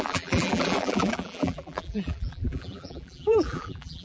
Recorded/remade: remade